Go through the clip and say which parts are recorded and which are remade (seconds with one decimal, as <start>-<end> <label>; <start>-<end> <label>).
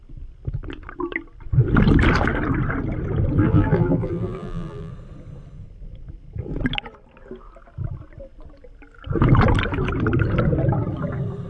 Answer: 0.0-3.4 recorded; 3.4-4.9 remade; 4.9-11.5 recorded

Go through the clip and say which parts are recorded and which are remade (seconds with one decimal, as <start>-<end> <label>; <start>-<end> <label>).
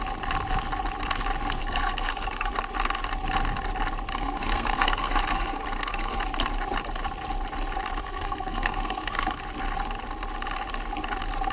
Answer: 0.0-1.6 recorded; 1.6-2.5 remade; 2.5-4.1 recorded; 4.1-6.2 remade; 6.2-8.0 recorded; 8.0-9.4 remade; 9.4-11.5 recorded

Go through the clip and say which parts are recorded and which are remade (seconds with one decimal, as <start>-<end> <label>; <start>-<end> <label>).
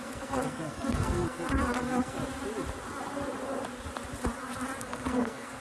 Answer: 0.0-2.2 remade; 2.2-4.8 recorded; 4.8-5.6 remade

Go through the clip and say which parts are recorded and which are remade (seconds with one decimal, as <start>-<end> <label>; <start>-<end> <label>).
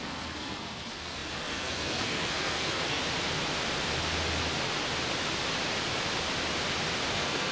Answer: 0.0-3.0 remade; 3.0-7.1 recorded; 7.1-7.5 remade